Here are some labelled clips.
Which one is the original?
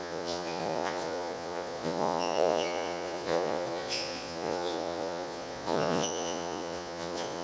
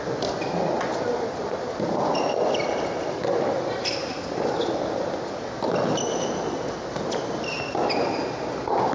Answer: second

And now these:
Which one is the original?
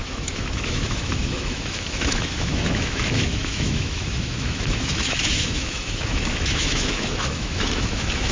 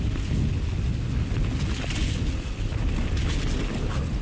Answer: second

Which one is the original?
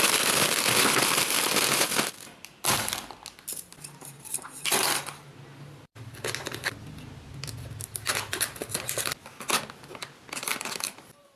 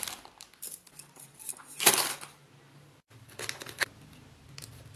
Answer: first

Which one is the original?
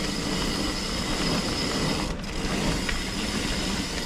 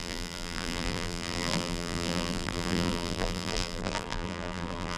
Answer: first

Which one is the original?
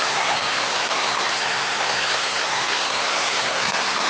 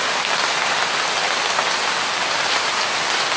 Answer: second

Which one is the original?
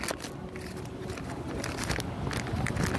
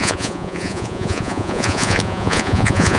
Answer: first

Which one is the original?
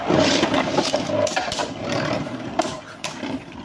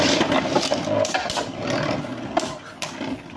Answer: second